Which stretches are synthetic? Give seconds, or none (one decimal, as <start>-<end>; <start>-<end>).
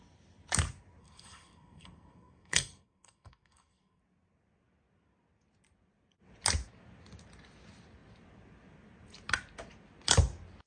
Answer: 1.0-4.0